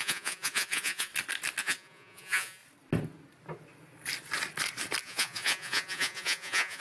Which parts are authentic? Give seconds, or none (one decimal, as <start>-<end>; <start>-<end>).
1.1-1.6; 2.6-5.0